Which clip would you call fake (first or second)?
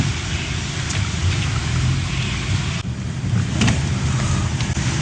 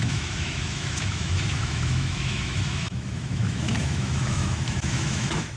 second